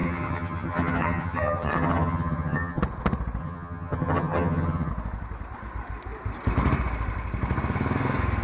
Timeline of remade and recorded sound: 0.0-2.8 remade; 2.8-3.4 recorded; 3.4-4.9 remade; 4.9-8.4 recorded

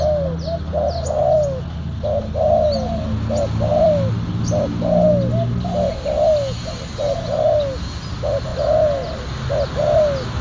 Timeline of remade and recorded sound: 0.0-10.4 recorded

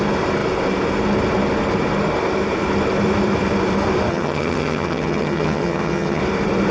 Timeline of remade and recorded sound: 0.0-4.1 recorded; 4.1-6.2 remade; 6.2-6.7 recorded

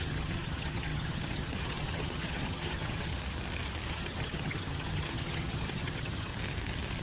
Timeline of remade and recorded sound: 0.0-3.1 remade; 3.1-3.9 recorded; 3.9-6.3 remade; 6.3-7.0 recorded